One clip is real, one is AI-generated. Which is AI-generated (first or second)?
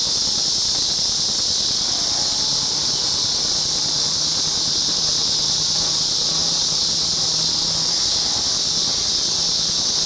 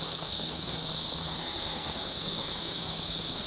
second